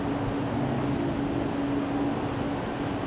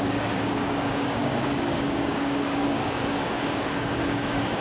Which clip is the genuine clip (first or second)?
first